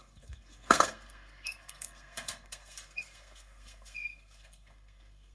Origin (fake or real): fake